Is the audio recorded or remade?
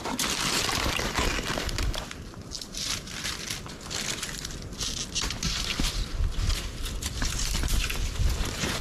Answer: remade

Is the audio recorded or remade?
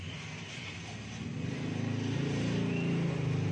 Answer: recorded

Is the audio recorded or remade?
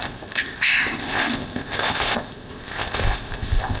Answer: remade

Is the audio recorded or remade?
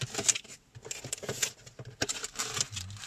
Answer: recorded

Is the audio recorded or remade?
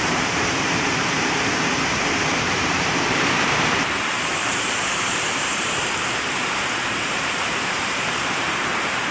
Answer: remade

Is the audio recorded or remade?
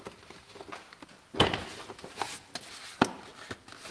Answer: recorded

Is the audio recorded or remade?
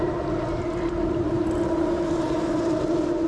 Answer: recorded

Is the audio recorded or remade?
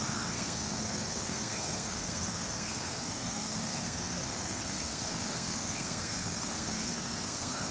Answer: remade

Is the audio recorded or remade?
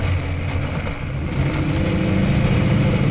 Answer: recorded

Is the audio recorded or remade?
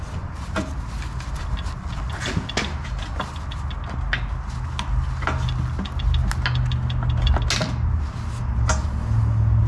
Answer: recorded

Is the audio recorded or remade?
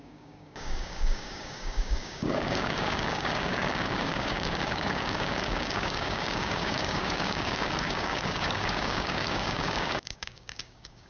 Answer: remade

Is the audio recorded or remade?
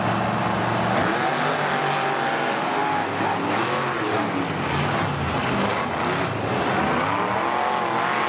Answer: recorded